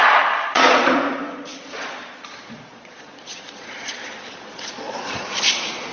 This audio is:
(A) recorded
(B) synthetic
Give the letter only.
B